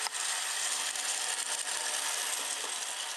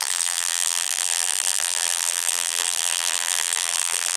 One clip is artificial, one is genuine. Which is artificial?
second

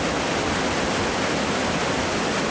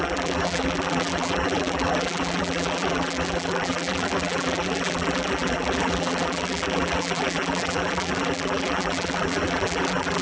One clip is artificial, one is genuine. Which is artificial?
second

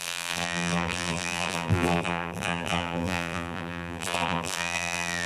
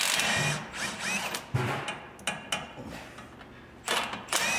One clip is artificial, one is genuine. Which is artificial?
first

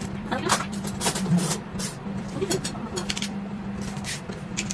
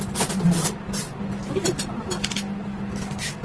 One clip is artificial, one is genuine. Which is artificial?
first